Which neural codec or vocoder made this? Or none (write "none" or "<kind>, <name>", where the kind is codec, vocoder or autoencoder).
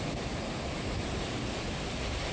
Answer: none